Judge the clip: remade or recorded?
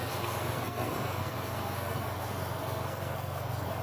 remade